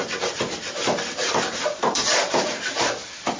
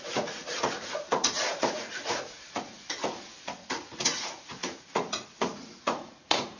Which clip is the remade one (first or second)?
second